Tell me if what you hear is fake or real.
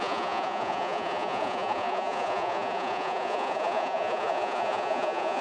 fake